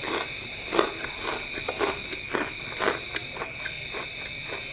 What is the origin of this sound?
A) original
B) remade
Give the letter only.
A